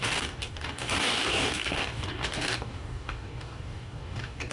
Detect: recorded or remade remade